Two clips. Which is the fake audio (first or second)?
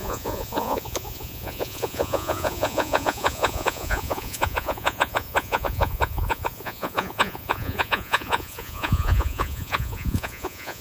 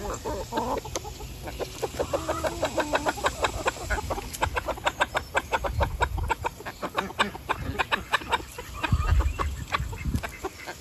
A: first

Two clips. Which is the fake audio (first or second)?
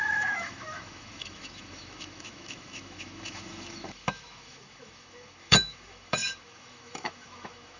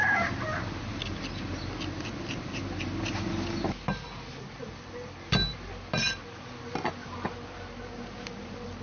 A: first